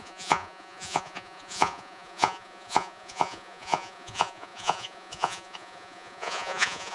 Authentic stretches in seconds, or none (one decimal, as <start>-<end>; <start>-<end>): none